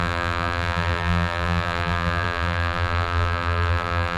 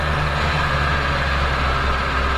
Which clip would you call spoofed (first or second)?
first